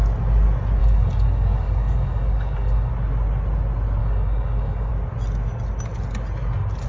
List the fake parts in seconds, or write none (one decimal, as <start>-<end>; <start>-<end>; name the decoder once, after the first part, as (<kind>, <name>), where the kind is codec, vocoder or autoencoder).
0.8-2.9 (codec, DAC); 4.0-4.9